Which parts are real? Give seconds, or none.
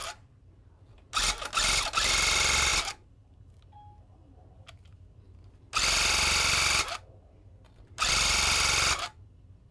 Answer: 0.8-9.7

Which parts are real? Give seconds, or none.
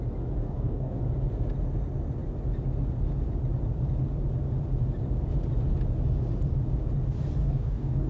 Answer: 0.0-0.4; 1.0-7.4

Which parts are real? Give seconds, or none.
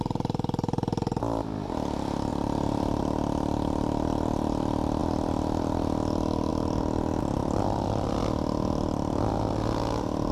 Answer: 1.0-2.3; 3.0-7.4; 8.2-10.3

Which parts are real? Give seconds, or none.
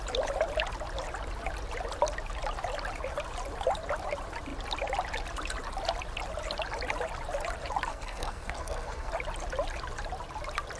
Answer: 0.0-7.9; 9.1-10.8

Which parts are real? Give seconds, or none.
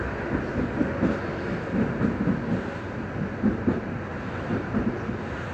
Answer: 0.0-0.5; 1.2-4.1; 4.9-5.5